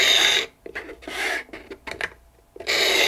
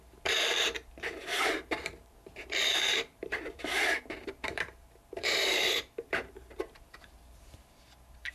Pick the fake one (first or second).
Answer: second